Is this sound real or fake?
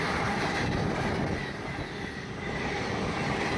real